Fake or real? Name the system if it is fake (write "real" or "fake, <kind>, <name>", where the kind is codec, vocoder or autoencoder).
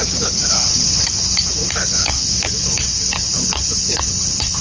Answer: fake, codec, HILCodec